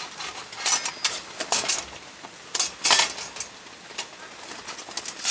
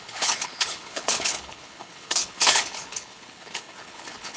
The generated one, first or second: second